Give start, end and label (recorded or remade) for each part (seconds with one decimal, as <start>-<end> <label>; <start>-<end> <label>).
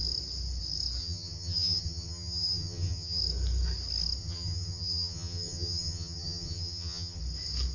0.0-1.0 recorded; 1.0-3.2 remade; 3.2-4.2 recorded; 4.2-7.2 remade; 7.2-7.7 recorded